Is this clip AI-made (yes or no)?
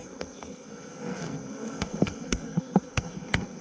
yes